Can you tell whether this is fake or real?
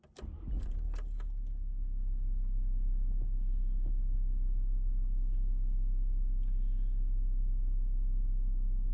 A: real